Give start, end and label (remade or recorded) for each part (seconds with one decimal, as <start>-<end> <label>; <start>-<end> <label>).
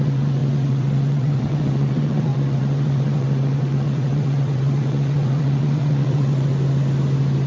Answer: 0.0-6.5 remade; 6.5-7.5 recorded